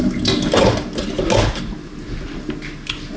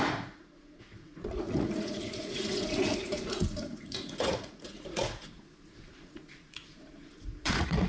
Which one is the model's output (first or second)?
second